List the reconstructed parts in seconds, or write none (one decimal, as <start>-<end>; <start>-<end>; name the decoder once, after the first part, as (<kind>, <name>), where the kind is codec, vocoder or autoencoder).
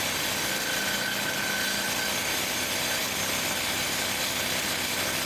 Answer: 3.0-4.6 (vocoder, BigVGAN v2)